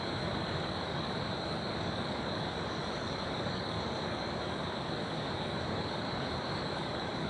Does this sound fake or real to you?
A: fake